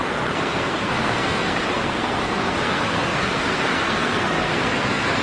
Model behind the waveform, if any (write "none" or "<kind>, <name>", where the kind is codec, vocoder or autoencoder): codec, SNAC